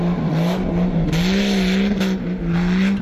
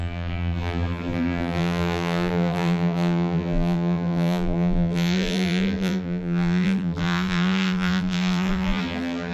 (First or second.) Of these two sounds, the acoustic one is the first